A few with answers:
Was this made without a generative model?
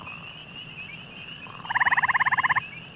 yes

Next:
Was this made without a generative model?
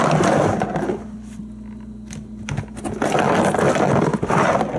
yes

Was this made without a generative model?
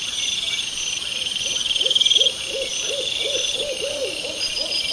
no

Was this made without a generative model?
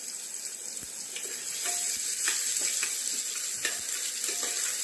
yes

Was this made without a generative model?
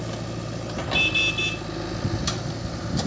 yes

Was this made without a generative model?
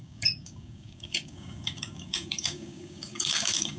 no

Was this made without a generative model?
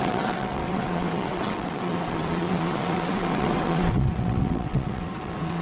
no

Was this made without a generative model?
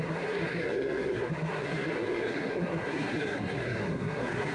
no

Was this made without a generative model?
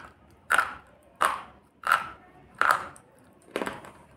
no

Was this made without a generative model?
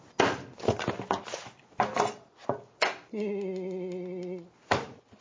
yes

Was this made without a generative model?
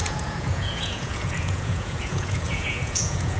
no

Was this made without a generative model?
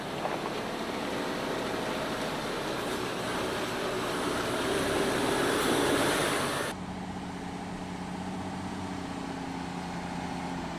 yes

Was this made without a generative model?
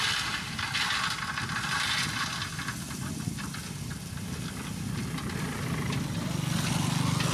yes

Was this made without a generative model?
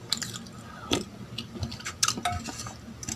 yes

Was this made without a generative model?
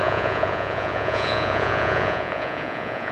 no